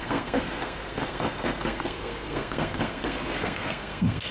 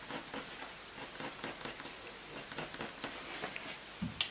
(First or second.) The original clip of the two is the second